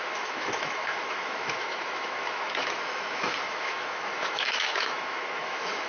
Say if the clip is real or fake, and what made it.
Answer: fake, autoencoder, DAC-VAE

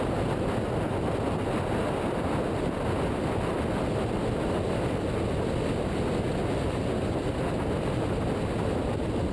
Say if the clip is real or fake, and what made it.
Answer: real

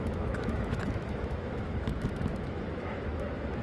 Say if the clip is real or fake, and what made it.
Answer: fake, autoencoder, DAC-VAE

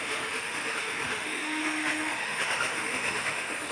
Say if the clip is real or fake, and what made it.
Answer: fake, autoencoder, DAC-VAE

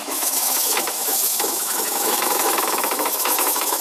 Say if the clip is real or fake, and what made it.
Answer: fake, autoencoder, DAC-VAE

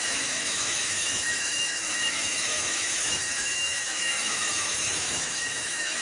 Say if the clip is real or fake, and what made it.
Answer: fake, autoencoder, DAC-VAE